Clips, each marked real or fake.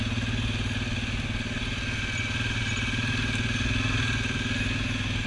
real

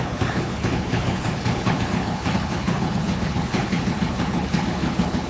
fake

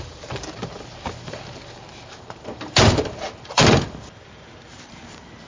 fake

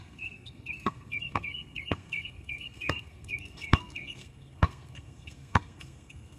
fake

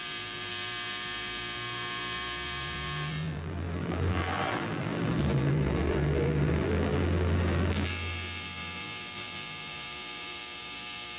fake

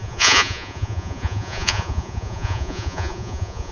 fake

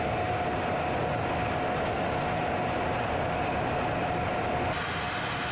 real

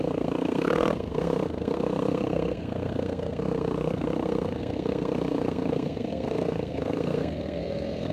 fake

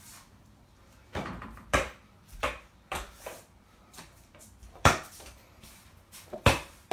fake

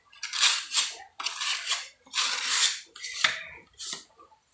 real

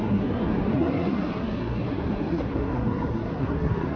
fake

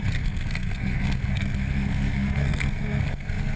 fake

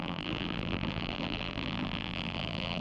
fake